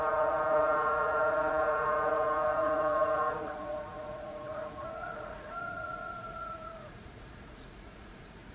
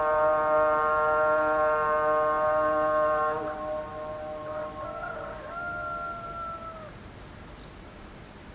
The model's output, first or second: first